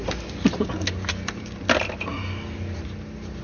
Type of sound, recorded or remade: recorded